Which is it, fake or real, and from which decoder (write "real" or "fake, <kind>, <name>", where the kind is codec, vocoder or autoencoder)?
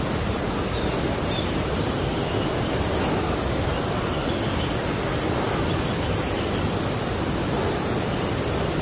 real